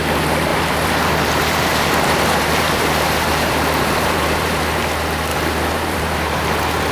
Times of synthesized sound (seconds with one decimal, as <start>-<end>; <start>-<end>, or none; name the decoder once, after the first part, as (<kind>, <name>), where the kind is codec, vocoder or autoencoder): 0.5-4.6 (vocoder, BigVGAN v2); 5.3-6.9